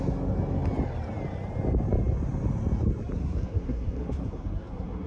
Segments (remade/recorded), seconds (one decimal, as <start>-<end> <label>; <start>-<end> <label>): 0.0-3.2 recorded; 3.2-5.1 remade